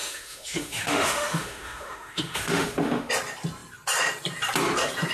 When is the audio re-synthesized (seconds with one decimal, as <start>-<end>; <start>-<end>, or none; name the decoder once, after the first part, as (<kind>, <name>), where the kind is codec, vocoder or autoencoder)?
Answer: 0.0-3.1 (autoencoder, DAC-VAE)